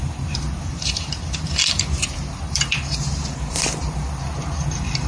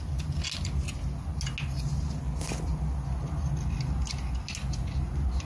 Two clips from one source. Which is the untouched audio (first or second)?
second